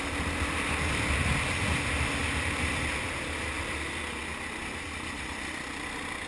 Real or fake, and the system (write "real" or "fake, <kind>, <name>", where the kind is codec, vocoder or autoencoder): real